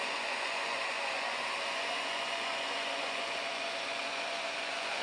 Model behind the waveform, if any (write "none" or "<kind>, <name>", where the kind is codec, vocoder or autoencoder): vocoder, Vocos